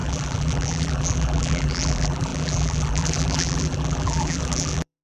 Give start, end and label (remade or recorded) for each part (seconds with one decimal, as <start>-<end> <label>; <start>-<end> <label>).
0.0-5.0 remade

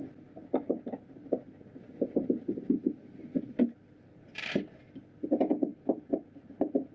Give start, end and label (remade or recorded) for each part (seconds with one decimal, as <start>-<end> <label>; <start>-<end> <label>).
0.0-5.7 recorded; 5.7-6.5 remade; 6.5-6.9 recorded